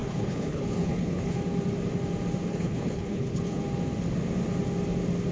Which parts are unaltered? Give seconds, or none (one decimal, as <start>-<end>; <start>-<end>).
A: 1.4-2.5; 3.6-5.3